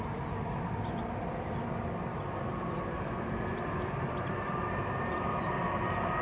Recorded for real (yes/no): no